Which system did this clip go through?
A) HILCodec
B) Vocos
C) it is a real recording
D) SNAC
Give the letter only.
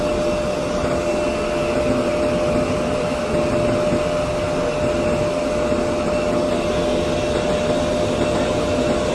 C